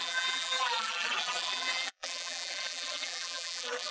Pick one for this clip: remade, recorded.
remade